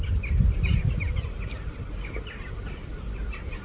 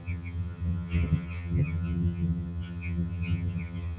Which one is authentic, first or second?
first